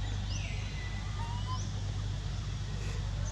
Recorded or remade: recorded